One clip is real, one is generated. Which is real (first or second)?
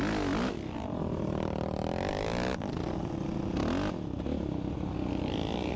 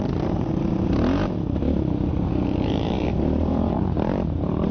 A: first